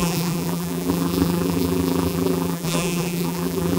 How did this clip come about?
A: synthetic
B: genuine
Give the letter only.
A